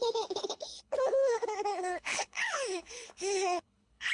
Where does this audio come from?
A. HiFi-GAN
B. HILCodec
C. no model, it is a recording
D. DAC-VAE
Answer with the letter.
B